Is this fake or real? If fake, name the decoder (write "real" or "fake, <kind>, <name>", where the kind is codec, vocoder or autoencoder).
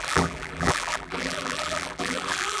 fake, vocoder, BigVGAN v2